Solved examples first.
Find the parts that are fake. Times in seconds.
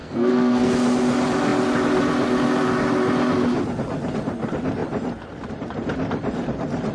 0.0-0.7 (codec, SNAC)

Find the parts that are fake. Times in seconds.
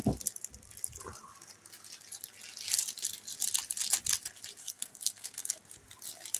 4.6-5.6 (codec, SNAC)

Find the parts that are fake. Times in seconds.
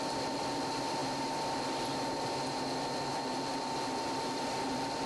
none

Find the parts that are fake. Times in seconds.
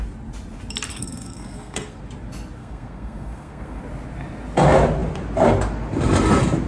0.9-2.0 (codec, SNAC); 2.6-3.8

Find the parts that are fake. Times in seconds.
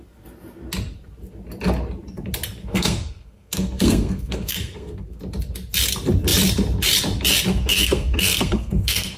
2.6-5.2 (codec, SNAC); 7.5-9.2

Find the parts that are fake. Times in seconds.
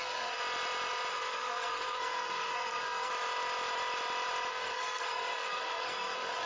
0.0-0.4 (codec, SNAC); 1.1-3.1; 4.5-6.5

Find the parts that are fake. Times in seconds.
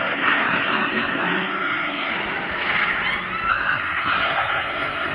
0.0-2.1 (codec, SNAC); 3.5-5.1